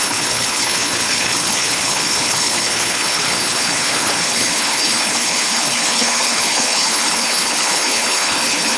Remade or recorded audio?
remade